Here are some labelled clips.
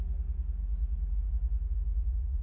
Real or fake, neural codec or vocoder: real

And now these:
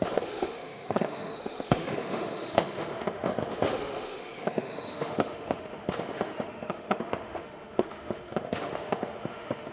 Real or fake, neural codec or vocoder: fake, autoencoder, DAC-VAE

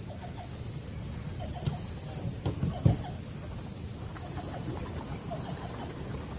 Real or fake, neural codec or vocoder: real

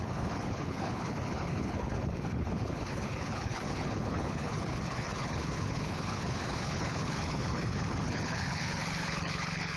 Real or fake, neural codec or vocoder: fake, codec, HILCodec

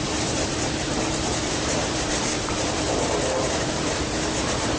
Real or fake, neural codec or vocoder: fake, vocoder, BigVGAN v2